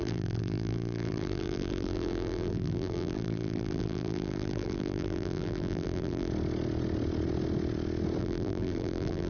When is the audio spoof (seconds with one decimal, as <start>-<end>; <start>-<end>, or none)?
0.0-6.3; 8.2-9.3